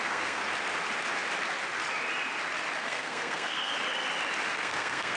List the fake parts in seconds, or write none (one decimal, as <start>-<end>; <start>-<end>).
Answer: 0.0-0.4; 2.8-3.7; 4.5-5.2